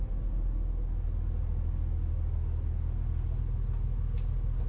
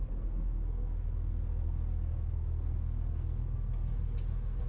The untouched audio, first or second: first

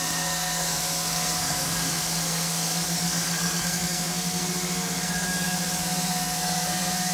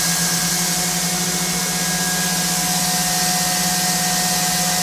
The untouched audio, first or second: second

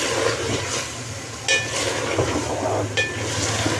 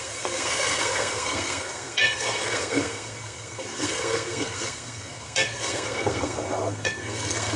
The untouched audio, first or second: first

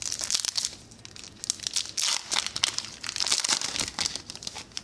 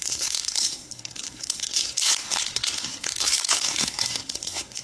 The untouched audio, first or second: first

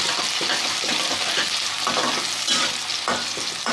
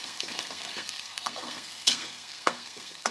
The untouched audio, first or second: first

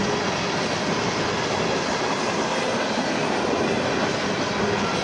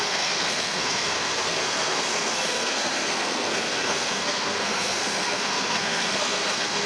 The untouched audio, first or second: first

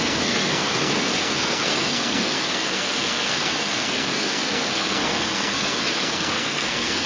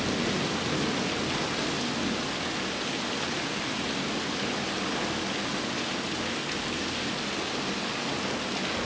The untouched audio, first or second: second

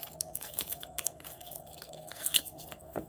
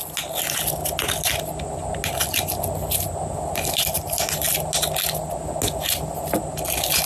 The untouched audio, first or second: second